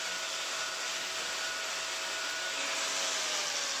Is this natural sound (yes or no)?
yes